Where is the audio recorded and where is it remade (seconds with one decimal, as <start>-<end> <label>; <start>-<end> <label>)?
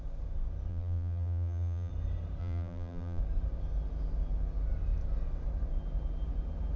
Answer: 0.0-0.7 recorded; 0.7-1.9 remade; 1.9-2.4 recorded; 2.4-3.2 remade; 3.2-6.8 recorded